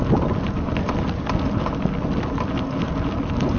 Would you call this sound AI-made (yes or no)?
no